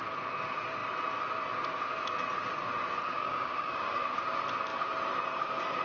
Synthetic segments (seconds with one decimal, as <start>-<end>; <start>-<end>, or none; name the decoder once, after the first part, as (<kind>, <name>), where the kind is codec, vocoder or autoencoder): 3.1-4.1 (codec, DAC)